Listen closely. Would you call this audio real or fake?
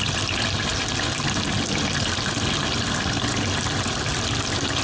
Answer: real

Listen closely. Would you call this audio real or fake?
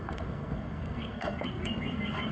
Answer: fake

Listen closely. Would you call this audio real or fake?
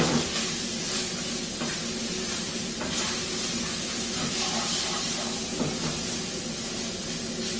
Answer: real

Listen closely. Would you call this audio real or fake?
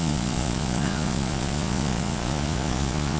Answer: fake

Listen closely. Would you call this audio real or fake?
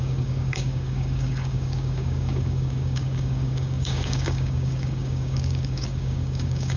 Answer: fake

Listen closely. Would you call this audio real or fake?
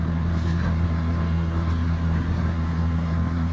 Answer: fake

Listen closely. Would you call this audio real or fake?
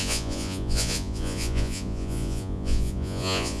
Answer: fake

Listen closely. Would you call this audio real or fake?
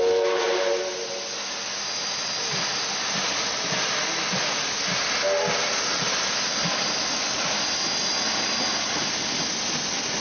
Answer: real